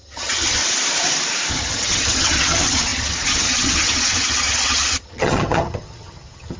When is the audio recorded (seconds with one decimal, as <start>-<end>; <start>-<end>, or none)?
0.6-1.5